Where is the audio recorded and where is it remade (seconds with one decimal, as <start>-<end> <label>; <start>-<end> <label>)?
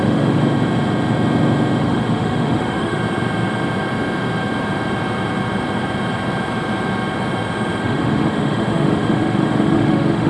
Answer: 0.0-0.4 remade; 0.4-1.8 recorded; 1.8-3.0 remade; 3.0-7.8 recorded; 7.8-10.3 remade